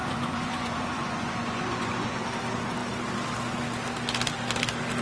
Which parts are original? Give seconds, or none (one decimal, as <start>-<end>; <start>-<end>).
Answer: 2.2-5.0